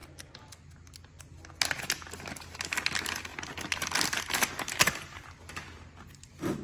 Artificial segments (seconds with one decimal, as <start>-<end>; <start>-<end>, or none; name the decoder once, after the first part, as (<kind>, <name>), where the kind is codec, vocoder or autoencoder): 3.3-4.3 (vocoder, BigVGAN v2)